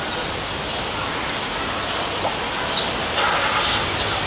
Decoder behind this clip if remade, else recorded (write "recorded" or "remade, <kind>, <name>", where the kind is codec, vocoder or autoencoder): recorded